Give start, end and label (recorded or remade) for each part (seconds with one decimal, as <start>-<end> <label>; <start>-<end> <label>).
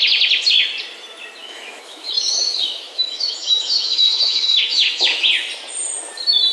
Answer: 0.0-1.4 recorded; 1.4-5.3 remade; 5.3-6.5 recorded